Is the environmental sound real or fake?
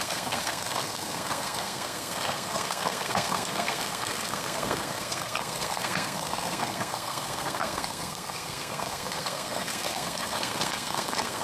fake